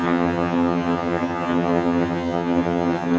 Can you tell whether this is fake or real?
fake